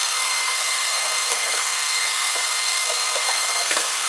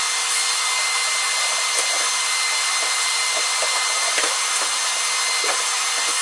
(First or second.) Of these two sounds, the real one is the second